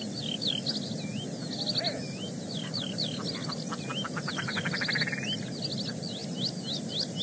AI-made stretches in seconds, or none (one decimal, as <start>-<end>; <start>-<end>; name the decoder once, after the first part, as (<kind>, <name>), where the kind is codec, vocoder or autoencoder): none